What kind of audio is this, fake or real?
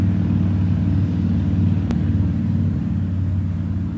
real